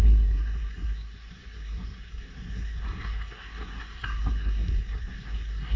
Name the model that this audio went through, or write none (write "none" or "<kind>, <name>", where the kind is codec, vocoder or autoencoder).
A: codec, SNAC